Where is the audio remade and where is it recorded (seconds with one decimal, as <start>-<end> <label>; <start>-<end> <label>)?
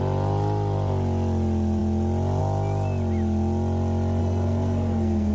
0.0-4.2 recorded; 4.2-5.3 remade